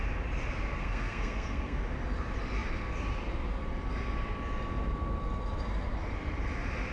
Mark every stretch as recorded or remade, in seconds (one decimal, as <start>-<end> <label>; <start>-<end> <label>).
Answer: 0.0-0.8 recorded; 0.8-1.8 remade; 1.8-6.9 recorded